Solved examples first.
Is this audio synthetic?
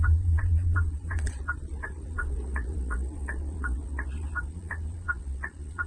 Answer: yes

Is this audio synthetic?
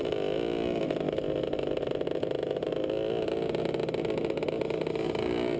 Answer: no